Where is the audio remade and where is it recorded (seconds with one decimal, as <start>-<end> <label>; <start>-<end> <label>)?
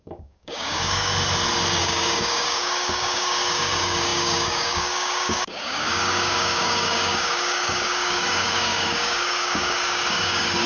0.0-1.1 remade; 1.1-1.8 recorded; 1.8-10.7 remade